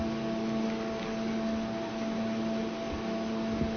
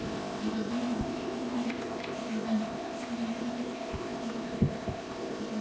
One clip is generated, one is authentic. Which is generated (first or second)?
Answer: second